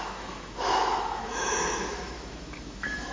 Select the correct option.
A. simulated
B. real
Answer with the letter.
A